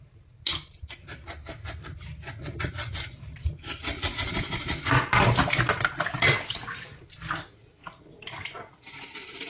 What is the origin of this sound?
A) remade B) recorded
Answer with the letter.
B